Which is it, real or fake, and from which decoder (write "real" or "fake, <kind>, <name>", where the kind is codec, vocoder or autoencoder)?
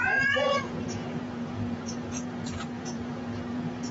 fake, vocoder, Vocos